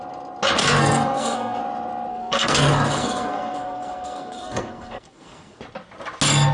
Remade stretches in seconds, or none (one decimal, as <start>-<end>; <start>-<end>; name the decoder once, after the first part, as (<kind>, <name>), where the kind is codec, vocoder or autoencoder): 0.6-1.6 (codec, SNAC); 2.1-5.6